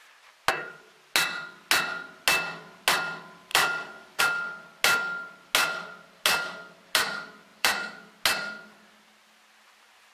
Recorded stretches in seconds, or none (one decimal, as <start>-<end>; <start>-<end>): 0.0-3.5; 4.2-7.5; 8.1-10.1